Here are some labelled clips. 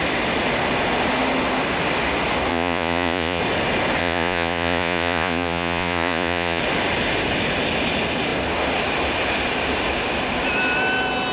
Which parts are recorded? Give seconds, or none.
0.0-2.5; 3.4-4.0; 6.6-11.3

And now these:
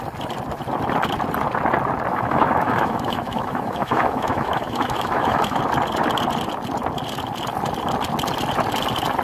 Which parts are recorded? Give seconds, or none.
0.0-2.1; 5.6-9.2